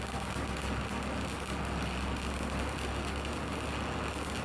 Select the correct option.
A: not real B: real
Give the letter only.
B